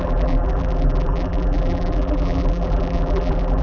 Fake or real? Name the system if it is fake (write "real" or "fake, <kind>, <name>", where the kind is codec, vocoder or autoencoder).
fake, vocoder, BigVGAN v2